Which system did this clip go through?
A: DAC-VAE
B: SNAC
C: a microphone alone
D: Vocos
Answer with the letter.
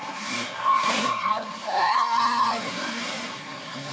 B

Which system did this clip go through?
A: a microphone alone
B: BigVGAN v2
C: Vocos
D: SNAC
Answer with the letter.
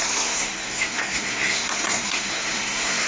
D